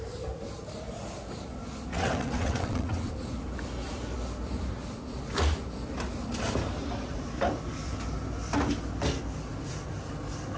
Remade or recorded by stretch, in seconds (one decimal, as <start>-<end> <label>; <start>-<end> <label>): 0.0-1.9 recorded; 1.9-3.1 remade; 3.1-10.6 recorded